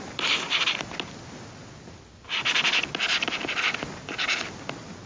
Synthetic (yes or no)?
no